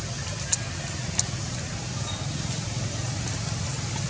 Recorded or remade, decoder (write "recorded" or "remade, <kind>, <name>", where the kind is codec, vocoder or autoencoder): recorded